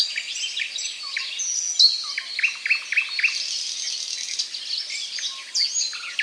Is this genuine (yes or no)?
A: yes